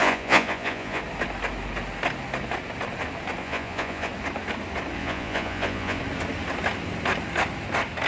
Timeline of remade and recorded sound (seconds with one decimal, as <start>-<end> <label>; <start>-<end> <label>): 0.0-1.0 remade; 1.0-3.4 recorded; 3.4-4.1 remade; 4.1-5.0 recorded; 5.0-6.0 remade; 6.0-8.1 recorded